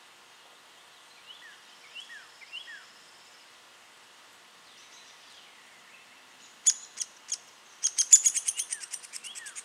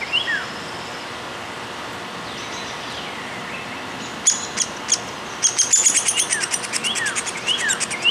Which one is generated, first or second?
first